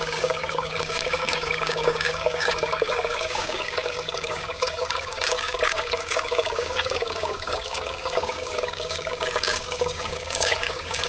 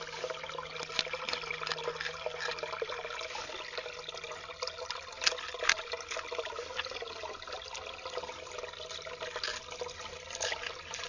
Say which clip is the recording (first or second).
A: second